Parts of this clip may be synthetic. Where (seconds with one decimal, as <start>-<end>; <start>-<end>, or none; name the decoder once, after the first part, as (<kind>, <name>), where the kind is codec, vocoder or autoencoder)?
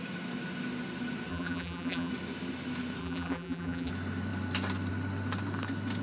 1.3-2.1 (vocoder, BigVGAN v2); 3.0-3.9